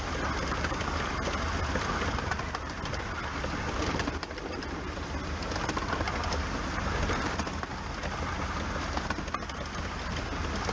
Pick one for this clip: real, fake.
real